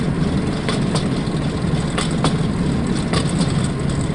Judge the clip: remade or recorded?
recorded